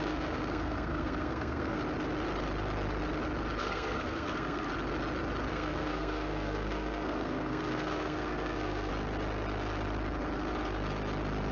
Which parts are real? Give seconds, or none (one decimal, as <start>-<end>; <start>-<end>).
1.8-3.6; 4.7-5.5; 8.9-11.5